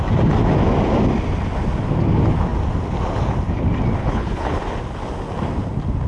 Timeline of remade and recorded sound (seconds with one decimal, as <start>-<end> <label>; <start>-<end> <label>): 0.0-4.0 recorded; 4.0-4.6 remade; 4.6-6.1 recorded